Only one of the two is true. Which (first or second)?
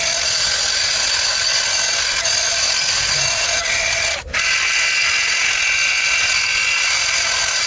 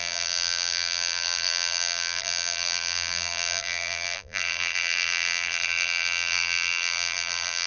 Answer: first